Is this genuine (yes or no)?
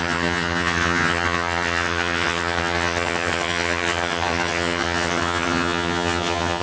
no